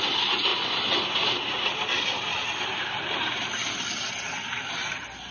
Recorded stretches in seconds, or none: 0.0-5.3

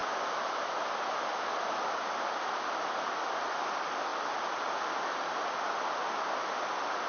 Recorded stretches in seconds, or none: 0.0-7.1

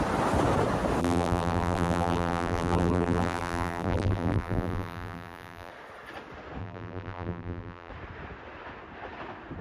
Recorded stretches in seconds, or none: 0.0-1.0; 5.7-6.6; 7.9-9.6

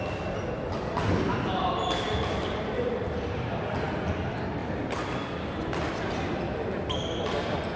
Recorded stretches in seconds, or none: 0.0-4.6; 7.2-7.8